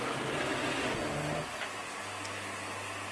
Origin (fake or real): real